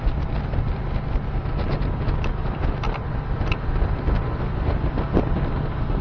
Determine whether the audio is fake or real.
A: real